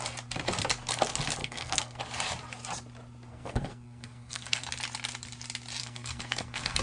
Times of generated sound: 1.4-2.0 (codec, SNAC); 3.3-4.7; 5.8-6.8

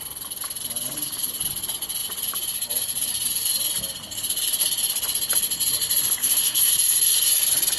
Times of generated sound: 6.2-6.7 (codec, SNAC)

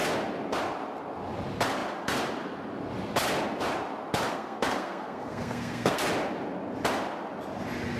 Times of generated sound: 4.3-6.0 (codec, SNAC)

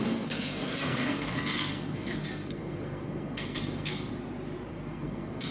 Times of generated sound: 0.0-4.1 (codec, SNAC); 4.7-5.5

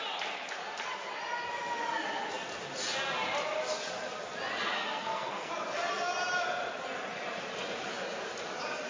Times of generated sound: 4.7-5.5 (codec, SNAC)